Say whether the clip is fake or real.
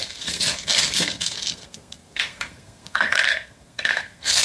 fake